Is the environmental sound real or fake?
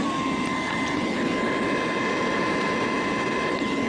real